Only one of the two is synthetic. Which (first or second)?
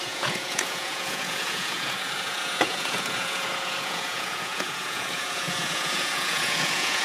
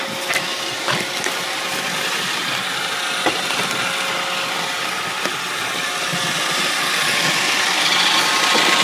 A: first